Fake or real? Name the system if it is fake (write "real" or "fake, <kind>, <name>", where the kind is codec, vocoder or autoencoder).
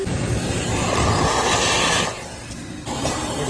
real